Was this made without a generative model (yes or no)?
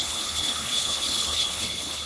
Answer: no